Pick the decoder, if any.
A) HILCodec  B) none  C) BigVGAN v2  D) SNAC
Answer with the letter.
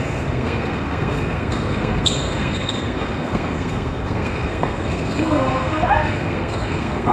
D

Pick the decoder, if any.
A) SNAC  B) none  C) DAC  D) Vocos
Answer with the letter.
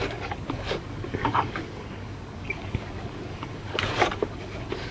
C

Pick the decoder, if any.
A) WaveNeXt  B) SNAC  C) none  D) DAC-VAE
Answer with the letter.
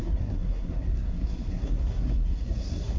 B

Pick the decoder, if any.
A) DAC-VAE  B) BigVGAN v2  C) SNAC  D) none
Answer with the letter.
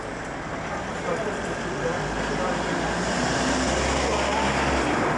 D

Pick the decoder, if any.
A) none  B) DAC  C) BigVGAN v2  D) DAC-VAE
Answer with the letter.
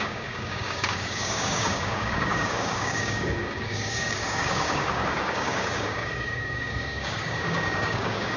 B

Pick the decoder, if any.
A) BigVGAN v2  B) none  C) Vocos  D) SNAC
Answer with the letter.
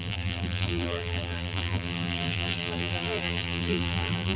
A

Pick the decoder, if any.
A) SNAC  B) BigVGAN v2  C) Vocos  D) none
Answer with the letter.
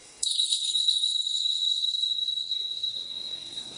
A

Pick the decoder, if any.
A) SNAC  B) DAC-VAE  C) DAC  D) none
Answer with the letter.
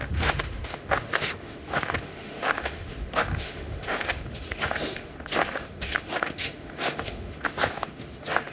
B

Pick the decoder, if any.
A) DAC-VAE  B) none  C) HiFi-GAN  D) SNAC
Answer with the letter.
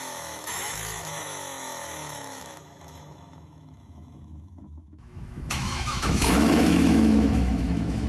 A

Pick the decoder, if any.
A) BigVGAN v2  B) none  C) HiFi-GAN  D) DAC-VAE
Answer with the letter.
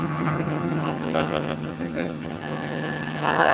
C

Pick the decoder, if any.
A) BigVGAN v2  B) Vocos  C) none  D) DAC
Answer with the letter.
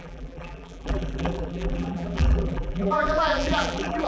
A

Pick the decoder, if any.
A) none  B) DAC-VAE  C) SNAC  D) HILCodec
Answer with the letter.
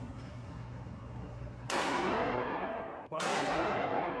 C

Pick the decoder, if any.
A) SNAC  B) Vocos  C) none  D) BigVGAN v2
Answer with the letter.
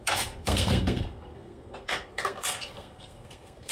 A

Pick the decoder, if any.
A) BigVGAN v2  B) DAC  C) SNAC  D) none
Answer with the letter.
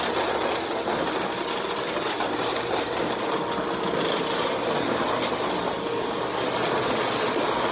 D